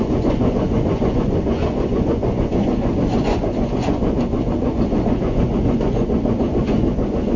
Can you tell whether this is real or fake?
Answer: fake